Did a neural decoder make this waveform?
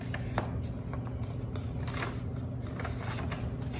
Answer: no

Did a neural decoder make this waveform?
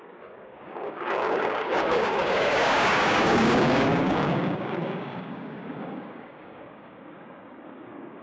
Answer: yes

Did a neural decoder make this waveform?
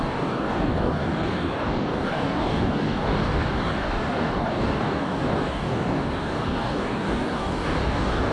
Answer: yes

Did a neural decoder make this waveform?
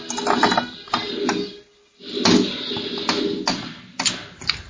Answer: no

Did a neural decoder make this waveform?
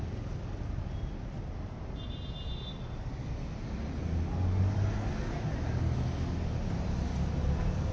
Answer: no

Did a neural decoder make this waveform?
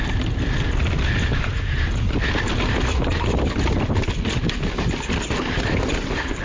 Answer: no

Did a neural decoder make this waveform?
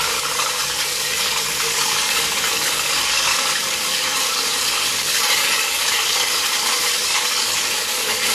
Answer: yes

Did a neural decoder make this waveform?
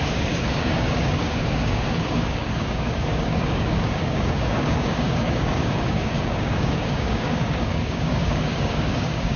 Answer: yes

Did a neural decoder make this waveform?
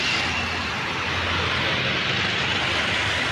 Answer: no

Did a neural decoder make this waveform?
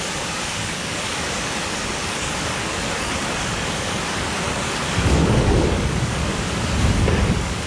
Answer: yes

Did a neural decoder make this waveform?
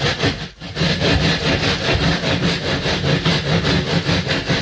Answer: no